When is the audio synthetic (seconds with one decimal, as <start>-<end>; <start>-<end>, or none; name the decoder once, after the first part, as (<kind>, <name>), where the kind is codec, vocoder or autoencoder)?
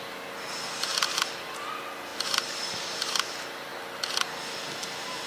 none